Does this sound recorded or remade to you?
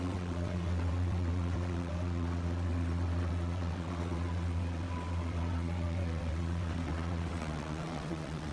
remade